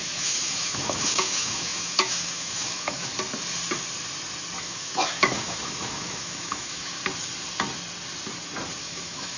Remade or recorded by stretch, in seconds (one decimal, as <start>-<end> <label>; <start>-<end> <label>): 0.0-3.1 remade; 3.1-4.6 recorded; 4.6-7.0 remade; 7.0-8.8 recorded; 8.8-9.4 remade